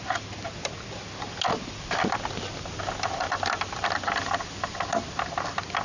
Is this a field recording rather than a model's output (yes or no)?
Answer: yes